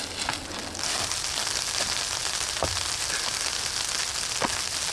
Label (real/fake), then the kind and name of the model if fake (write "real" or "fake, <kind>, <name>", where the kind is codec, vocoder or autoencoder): real